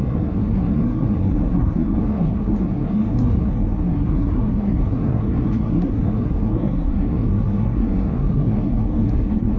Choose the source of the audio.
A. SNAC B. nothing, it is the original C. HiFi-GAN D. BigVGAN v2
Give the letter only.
A